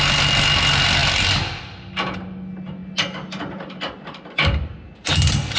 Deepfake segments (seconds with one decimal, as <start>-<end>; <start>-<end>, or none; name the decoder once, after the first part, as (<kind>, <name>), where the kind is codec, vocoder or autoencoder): none